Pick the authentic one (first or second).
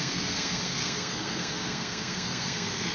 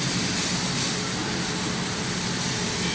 second